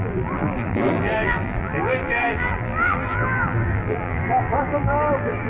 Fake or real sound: fake